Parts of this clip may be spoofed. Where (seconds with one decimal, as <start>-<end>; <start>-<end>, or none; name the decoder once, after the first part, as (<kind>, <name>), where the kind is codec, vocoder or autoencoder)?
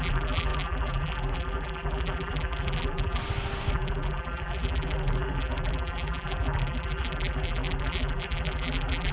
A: 0.0-3.2 (vocoder, BigVGAN v2); 3.7-9.1